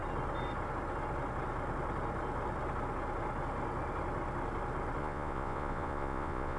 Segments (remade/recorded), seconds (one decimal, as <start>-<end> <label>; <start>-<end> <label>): 0.0-5.0 recorded; 5.0-6.6 remade